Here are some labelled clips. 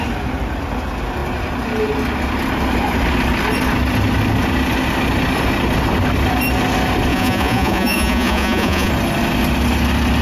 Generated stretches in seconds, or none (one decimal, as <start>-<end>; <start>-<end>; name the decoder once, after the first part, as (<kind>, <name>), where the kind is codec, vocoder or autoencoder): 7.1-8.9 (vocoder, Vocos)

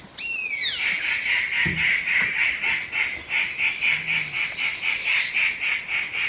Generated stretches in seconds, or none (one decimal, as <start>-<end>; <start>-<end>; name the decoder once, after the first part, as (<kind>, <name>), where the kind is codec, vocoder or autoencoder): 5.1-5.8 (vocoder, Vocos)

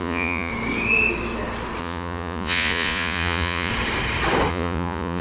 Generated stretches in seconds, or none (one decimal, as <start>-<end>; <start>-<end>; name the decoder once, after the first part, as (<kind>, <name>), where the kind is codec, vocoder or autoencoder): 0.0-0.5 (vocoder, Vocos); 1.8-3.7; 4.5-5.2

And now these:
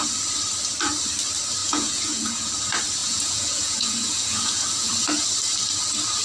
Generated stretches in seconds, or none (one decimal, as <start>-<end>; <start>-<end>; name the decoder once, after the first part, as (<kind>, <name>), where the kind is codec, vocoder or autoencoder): 1.6-2.5 (vocoder, Vocos); 3.0-4.9

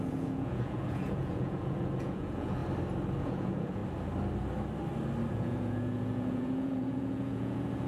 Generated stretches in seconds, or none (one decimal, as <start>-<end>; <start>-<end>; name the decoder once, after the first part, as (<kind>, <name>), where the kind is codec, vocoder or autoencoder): 0.0-2.6 (vocoder, Vocos); 3.2-3.8; 5.3-7.9

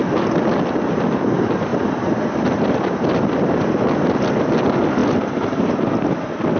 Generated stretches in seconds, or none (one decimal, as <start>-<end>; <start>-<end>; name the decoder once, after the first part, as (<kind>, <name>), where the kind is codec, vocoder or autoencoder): none

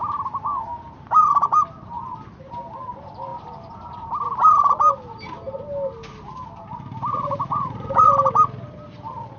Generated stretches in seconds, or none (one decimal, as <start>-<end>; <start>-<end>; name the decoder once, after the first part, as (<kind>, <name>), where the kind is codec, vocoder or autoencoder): 7.1-8.1 (vocoder, Vocos)

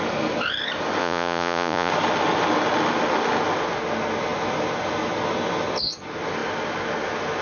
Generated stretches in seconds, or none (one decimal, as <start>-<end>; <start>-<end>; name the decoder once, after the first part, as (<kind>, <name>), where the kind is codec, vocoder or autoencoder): 1.0-1.9 (vocoder, Vocos)